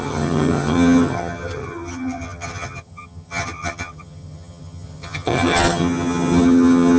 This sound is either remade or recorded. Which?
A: remade